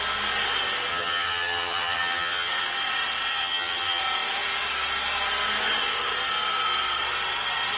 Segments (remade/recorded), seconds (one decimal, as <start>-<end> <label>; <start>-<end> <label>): 0.0-0.9 recorded; 0.9-2.5 remade; 2.5-3.3 recorded; 3.3-4.0 remade; 4.0-7.8 recorded